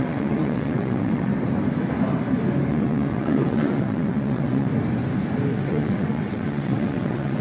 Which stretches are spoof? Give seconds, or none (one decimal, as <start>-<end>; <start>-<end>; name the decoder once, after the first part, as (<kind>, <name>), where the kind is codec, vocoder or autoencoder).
0.0-1.3 (vocoder, WaveNeXt); 2.7-4.7; 5.5-7.4